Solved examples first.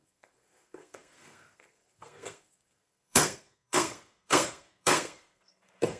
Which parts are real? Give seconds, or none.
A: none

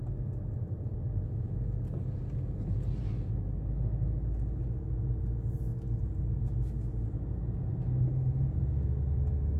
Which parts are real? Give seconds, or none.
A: 0.0-9.6

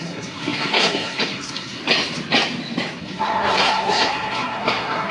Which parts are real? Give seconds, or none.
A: 1.8-3.0

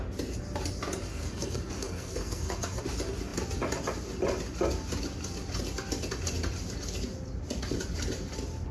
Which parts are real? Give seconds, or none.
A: 0.0-1.1; 2.8-8.7

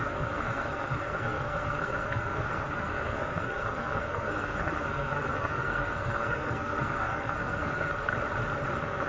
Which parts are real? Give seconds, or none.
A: 8.1-8.7

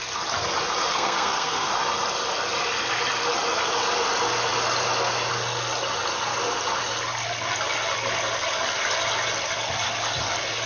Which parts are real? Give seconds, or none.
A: 0.0-0.9; 1.7-10.7